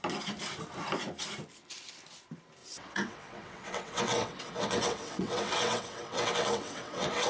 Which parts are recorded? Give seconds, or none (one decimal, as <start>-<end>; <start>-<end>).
0.0-2.6